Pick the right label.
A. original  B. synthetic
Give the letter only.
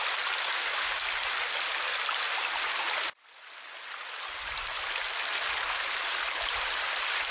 A